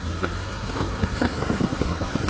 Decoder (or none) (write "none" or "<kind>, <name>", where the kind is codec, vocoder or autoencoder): codec, SNAC